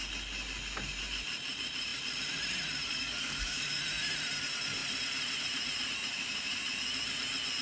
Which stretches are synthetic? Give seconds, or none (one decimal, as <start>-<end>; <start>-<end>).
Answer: 2.9-3.8